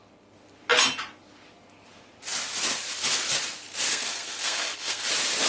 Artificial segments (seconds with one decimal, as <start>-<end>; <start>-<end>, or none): 3.9-5.0